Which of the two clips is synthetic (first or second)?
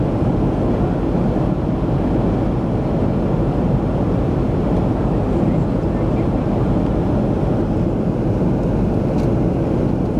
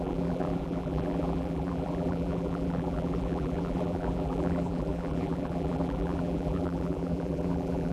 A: second